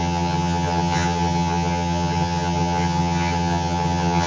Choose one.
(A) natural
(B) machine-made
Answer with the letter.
B